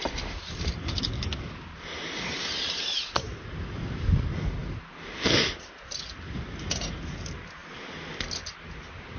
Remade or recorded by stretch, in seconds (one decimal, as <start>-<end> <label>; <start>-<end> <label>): 0.0-0.8 recorded; 0.8-1.5 remade; 1.5-9.2 recorded